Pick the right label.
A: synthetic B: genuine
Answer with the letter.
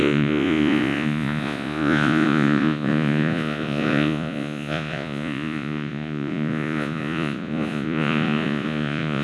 A